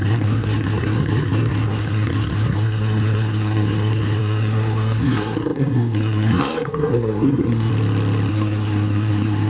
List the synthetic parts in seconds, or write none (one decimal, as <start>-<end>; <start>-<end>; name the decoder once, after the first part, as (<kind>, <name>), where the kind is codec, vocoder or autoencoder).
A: 0.0-7.7 (codec, SNAC); 8.3-9.5